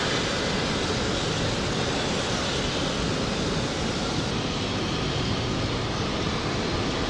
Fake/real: real